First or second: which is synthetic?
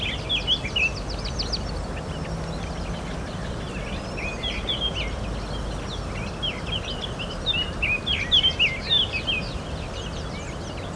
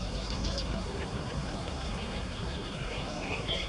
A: second